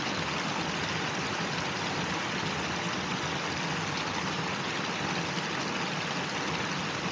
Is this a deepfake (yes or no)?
no